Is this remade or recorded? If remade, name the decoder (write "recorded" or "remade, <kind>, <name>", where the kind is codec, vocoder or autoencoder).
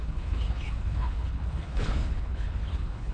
remade, codec, HILCodec